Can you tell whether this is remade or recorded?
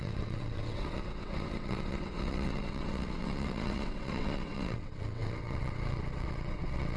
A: remade